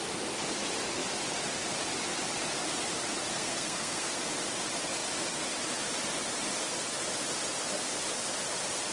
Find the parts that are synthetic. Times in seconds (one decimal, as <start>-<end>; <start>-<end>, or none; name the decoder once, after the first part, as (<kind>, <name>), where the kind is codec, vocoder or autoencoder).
3.3-4.3 (codec, SNAC)